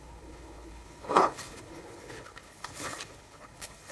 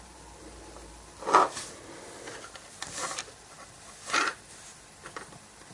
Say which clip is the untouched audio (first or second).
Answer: second